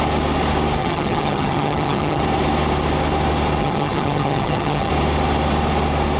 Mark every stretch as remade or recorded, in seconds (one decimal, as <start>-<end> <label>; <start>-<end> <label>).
0.0-0.8 recorded; 0.8-2.2 remade; 2.2-3.6 recorded; 3.6-4.9 remade; 4.9-6.2 recorded